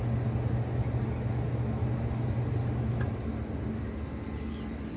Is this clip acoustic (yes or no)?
yes